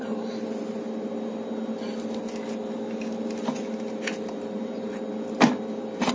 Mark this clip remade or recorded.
recorded